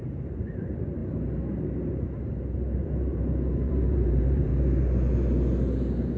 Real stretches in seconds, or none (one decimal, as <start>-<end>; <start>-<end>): 1.0-1.9; 4.5-6.2